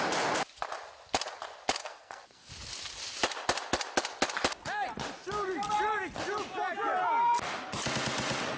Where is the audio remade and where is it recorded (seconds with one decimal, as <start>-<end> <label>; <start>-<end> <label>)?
0.0-1.8 recorded; 1.8-2.5 remade; 2.5-8.6 recorded